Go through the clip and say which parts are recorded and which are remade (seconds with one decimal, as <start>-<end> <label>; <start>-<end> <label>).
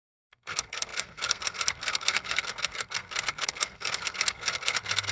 0.0-5.1 remade